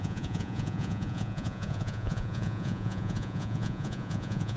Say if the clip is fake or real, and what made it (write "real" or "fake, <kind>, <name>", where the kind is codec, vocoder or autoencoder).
fake, vocoder, Vocos